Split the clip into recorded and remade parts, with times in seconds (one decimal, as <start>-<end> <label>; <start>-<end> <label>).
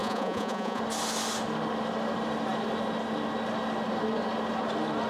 0.0-0.8 remade; 0.8-5.1 recorded